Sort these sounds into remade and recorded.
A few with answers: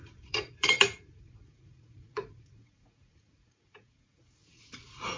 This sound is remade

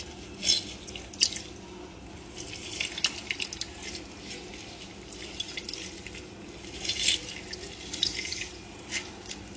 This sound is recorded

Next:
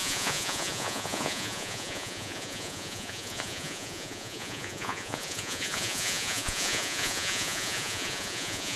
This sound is remade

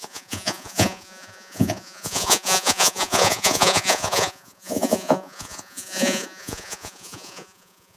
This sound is remade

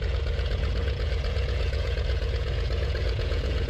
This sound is remade